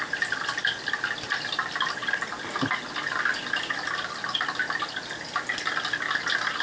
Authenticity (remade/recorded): recorded